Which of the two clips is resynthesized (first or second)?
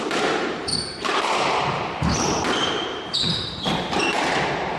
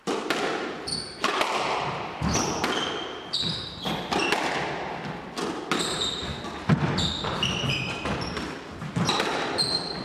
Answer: first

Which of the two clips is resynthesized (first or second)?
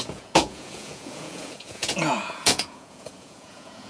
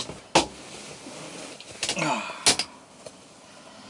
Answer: first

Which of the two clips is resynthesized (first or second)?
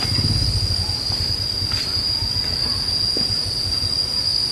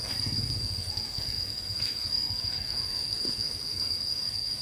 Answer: second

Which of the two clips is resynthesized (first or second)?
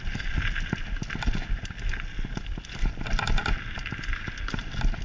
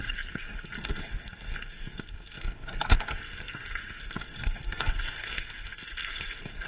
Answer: second